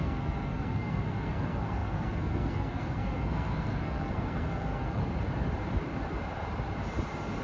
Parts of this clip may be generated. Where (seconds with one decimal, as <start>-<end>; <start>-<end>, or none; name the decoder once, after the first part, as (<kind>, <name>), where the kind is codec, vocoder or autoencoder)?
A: 0.0-5.0 (codec, SNAC)